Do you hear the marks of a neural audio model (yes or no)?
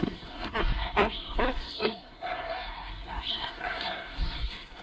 yes